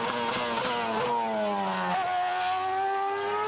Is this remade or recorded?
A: recorded